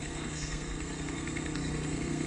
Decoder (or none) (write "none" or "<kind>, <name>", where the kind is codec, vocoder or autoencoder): codec, SNAC